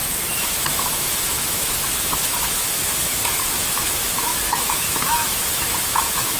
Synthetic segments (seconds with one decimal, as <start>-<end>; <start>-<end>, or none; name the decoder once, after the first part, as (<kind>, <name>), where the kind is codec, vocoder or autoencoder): 0.0-6.4 (autoencoder, DAC-VAE)